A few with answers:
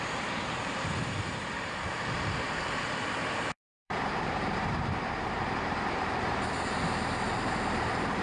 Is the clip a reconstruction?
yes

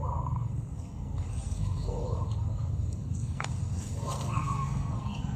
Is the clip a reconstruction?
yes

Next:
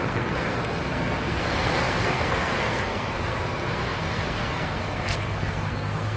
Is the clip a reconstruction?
yes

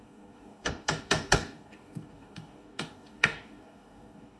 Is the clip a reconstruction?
yes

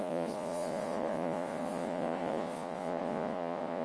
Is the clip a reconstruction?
yes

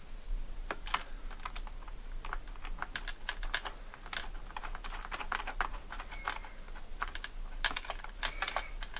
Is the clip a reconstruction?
no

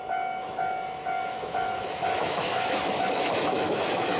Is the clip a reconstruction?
yes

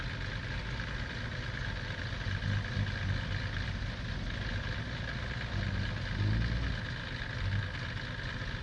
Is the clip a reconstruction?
no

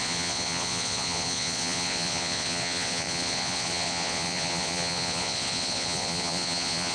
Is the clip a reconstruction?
yes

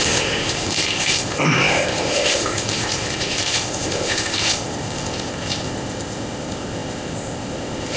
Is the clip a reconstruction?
yes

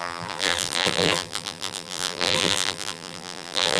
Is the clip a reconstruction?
yes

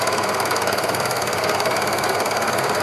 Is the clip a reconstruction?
yes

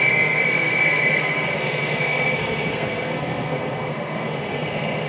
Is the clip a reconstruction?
yes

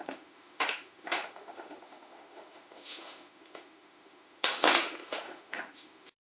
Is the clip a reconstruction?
yes